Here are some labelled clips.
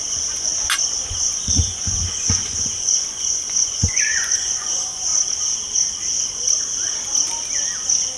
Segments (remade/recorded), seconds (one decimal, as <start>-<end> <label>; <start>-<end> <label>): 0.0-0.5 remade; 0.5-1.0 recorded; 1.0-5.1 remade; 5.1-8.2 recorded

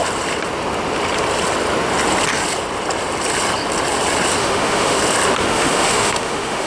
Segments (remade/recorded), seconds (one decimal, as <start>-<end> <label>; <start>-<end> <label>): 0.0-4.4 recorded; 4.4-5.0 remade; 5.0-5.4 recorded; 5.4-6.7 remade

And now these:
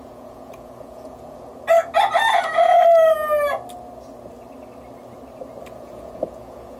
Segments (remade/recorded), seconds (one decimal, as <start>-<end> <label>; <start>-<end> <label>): 0.0-1.5 remade; 1.5-5.6 recorded; 5.6-6.8 remade

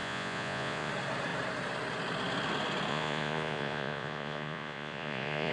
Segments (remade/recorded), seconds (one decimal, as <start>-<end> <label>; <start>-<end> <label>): 0.0-0.9 remade; 0.9-2.9 recorded; 2.9-5.5 remade

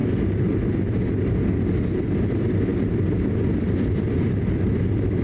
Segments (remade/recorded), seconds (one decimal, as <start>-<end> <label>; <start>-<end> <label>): 0.0-2.0 recorded; 2.0-5.2 remade

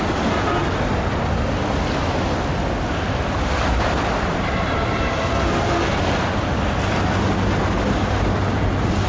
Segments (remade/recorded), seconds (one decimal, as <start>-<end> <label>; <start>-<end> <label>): 0.0-9.1 recorded

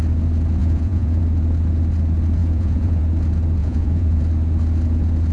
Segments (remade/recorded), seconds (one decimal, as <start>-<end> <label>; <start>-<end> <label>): 0.0-0.6 recorded; 0.6-1.2 remade; 1.2-2.4 recorded; 2.4-3.0 remade; 3.0-3.6 recorded; 3.6-4.2 remade; 4.2-5.3 recorded